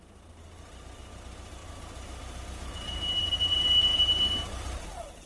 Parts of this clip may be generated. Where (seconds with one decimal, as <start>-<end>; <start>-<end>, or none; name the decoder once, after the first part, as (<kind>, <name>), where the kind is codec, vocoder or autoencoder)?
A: none